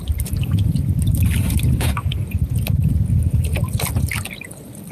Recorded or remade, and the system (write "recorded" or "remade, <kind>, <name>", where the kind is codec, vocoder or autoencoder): recorded